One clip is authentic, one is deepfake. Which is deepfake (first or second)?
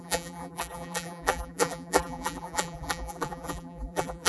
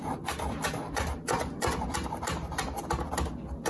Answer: first